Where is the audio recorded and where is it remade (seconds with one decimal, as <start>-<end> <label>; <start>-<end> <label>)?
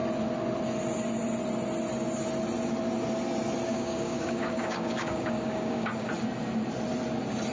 0.0-3.7 recorded; 3.7-6.1 remade; 6.1-7.5 recorded